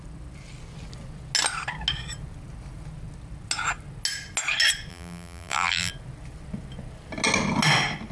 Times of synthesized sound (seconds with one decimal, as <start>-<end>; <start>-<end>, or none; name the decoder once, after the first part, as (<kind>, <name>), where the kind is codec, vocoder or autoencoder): 4.9-5.9 (vocoder, BigVGAN v2)